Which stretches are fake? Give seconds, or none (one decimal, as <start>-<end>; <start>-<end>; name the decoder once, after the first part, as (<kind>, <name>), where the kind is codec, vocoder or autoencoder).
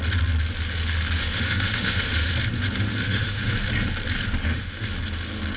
1.2-2.3 (autoencoder, DAC-VAE); 2.9-3.5; 4.4-5.0